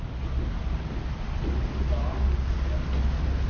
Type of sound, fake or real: real